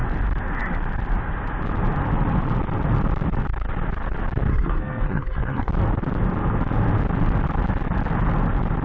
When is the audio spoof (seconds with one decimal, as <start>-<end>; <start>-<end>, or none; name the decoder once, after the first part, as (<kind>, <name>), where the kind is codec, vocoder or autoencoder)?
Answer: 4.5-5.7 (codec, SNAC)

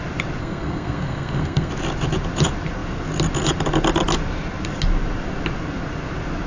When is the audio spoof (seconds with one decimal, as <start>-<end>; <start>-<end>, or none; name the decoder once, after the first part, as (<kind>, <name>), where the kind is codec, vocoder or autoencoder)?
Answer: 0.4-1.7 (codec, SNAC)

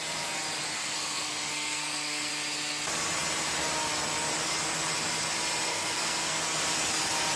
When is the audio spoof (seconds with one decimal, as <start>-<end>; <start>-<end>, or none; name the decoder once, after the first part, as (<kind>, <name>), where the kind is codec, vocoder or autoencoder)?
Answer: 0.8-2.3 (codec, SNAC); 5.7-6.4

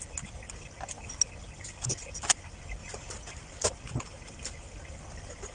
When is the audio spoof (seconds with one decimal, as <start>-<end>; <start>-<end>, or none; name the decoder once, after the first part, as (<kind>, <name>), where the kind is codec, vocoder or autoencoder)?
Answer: none